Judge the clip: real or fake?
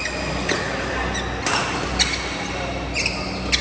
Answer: real